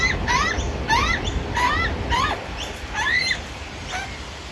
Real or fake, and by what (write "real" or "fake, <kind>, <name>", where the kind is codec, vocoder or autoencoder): real